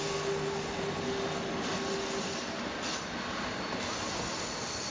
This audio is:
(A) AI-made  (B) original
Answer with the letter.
B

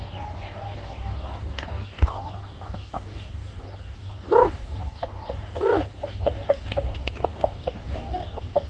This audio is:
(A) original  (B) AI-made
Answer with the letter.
B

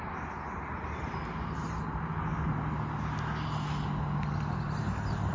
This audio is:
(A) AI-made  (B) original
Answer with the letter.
B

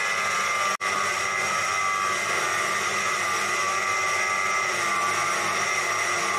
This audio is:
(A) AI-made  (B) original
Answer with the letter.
B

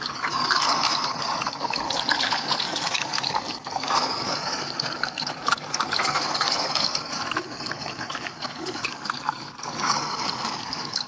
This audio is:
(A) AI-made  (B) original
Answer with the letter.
A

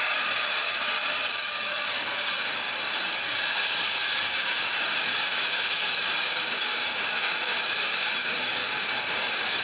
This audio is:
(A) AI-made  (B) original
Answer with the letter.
A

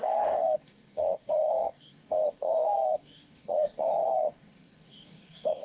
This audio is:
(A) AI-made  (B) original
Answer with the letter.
A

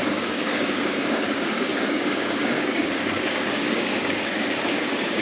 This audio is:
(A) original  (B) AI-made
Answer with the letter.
B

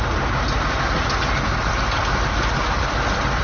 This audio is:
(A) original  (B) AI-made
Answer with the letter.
A